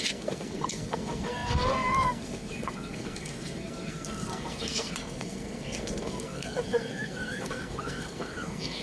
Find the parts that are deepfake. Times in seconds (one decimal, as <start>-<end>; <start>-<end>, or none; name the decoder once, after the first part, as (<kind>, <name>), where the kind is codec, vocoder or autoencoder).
0.0-8.8 (codec, SNAC)